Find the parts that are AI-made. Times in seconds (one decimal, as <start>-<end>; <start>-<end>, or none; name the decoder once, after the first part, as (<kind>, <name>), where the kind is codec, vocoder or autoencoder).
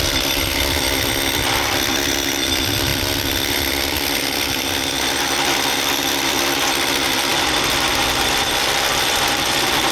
0.0-9.9 (vocoder, BigVGAN v2)